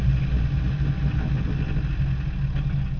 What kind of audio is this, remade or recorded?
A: recorded